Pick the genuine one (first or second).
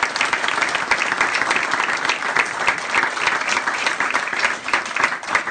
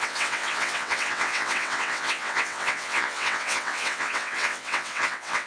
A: first